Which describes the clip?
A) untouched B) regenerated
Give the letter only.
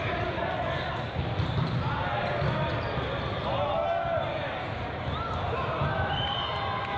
A